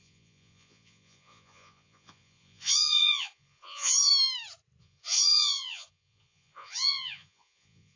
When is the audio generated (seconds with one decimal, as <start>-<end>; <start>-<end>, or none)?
0.0-4.1; 4.8-8.0

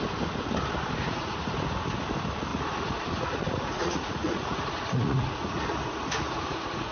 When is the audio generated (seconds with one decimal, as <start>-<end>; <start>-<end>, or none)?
1.0-1.5; 2.5-6.9

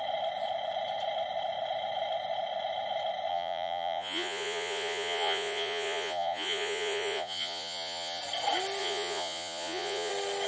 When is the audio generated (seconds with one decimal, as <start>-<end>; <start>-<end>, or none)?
3.3-8.2; 8.8-10.1

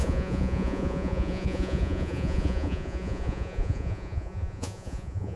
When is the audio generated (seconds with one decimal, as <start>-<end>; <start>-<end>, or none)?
0.0-5.4

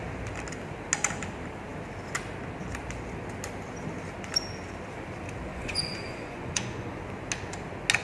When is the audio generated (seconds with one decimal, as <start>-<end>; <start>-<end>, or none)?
5.5-7.0

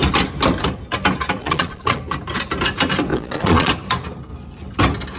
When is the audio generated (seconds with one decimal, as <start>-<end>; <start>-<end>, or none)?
1.4-2.0; 3.1-3.7

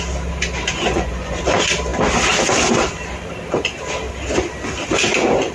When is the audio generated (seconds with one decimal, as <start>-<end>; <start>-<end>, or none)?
0.6-1.4